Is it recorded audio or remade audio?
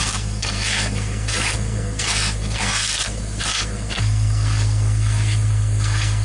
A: remade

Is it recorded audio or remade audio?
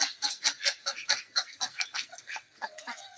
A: remade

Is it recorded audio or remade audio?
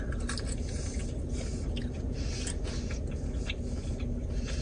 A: recorded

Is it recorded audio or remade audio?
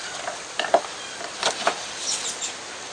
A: recorded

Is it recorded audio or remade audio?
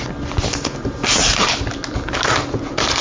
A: recorded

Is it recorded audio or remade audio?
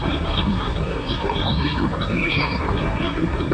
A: remade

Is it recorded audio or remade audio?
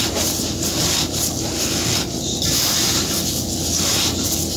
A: recorded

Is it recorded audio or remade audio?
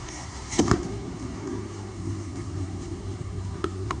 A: remade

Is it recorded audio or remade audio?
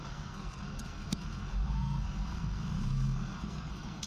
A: remade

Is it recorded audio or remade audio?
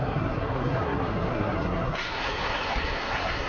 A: remade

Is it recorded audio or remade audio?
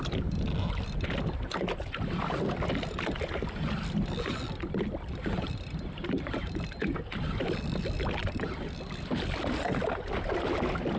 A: recorded